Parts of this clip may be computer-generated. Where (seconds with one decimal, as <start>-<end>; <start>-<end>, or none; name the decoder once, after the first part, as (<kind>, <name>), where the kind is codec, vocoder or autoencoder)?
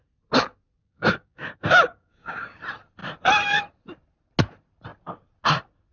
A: 0.8-2.6 (codec, DAC)